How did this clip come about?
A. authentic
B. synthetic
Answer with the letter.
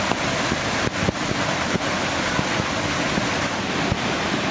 A